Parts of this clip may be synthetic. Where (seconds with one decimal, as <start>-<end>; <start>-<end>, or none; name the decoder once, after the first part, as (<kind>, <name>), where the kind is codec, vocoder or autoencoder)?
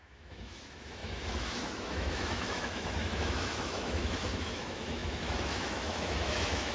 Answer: 0.0-6.7 (autoencoder, DAC-VAE)